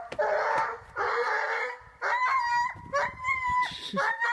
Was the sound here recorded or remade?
recorded